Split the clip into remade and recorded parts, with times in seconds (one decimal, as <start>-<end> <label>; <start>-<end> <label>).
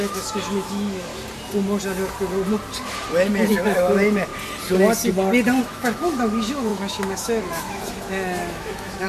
0.0-1.1 remade; 1.1-3.5 recorded; 3.5-4.3 remade; 4.3-5.6 recorded; 5.6-9.1 remade